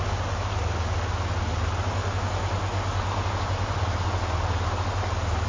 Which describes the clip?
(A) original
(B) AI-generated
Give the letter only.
A